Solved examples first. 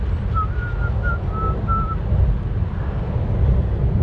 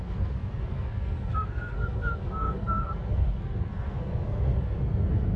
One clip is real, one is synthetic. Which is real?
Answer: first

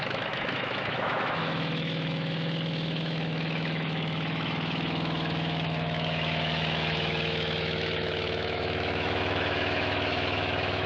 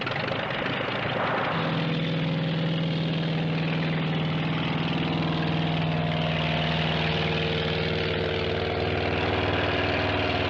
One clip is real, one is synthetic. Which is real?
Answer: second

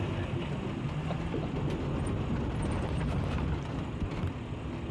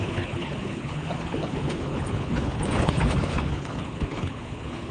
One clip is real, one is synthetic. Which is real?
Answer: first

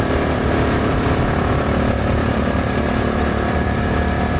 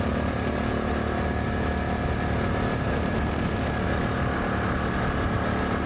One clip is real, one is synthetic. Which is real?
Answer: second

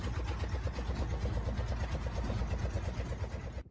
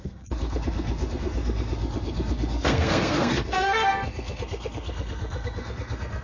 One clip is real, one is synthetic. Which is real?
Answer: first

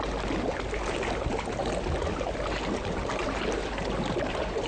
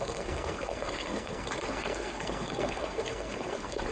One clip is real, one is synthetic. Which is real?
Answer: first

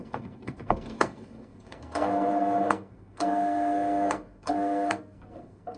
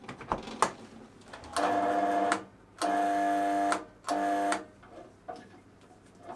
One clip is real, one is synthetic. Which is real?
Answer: second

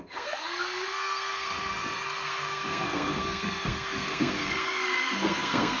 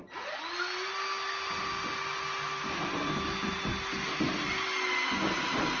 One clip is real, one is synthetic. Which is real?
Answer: second